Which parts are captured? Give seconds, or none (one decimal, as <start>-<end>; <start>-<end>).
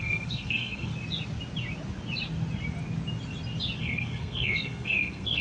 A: 0.9-3.8